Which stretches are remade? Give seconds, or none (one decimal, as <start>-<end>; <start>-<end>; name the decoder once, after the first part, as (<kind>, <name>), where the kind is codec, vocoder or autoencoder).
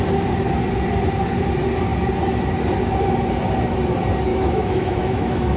4.3-5.6 (autoencoder, DAC-VAE)